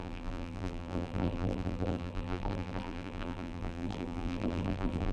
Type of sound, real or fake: fake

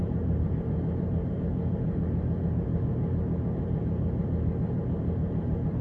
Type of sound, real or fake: fake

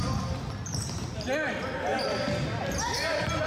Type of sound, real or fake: real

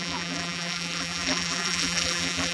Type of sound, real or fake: fake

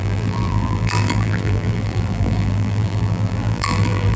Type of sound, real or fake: fake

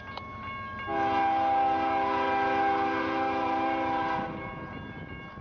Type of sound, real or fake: real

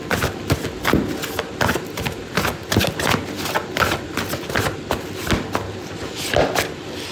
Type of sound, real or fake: real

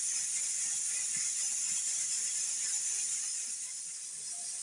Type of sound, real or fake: fake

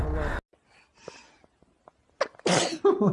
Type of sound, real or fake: real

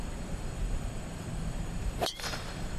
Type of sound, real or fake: fake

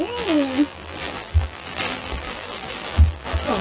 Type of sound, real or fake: fake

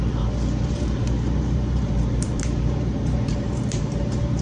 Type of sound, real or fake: fake